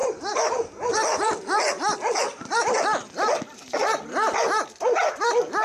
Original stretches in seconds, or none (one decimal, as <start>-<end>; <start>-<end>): 0.0-5.6